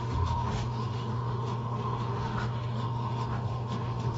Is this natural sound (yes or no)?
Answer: no